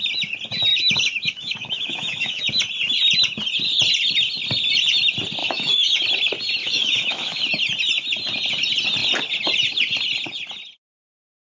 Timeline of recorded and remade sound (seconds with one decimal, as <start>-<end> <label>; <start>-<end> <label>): 0.0-0.7 recorded; 0.7-2.4 remade; 2.4-5.4 recorded; 5.4-6.0 remade; 6.0-6.6 recorded; 6.6-7.4 remade; 7.4-11.5 recorded